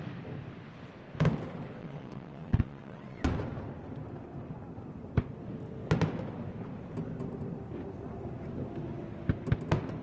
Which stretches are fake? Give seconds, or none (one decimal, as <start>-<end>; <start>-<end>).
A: 1.8-3.3